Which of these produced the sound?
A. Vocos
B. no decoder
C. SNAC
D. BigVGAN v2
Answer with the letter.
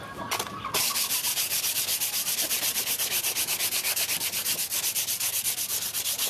B